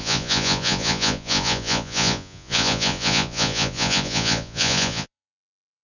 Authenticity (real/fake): fake